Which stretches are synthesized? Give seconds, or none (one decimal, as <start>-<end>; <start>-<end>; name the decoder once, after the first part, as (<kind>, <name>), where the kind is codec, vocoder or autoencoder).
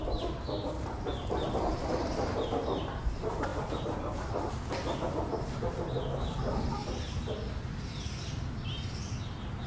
3.5-8.3 (vocoder, BigVGAN v2)